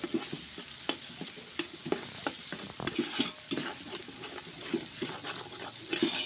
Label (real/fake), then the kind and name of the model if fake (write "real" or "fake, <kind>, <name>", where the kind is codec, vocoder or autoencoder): real